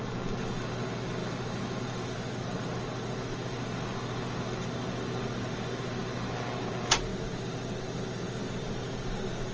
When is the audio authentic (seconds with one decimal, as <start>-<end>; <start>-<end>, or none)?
0.0-9.5